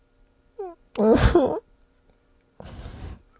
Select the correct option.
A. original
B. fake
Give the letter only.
A